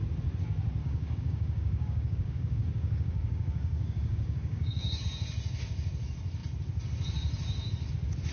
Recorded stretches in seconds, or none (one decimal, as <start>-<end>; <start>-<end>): 0.0-0.8; 5.0-8.3